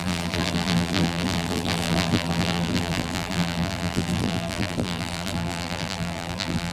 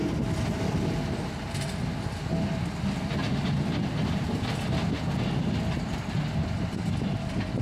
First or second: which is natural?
second